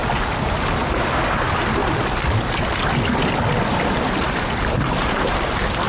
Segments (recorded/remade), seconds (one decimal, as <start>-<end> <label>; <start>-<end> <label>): 0.0-5.9 recorded